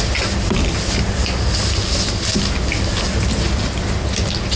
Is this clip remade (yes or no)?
no